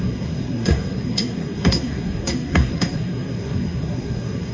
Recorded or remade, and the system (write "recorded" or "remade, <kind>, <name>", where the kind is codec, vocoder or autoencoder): remade, codec, SNAC